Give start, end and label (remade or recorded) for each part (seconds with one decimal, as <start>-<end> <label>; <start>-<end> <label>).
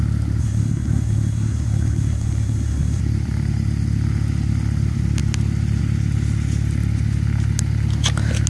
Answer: 0.0-0.4 recorded; 0.4-3.0 remade; 3.0-8.5 recorded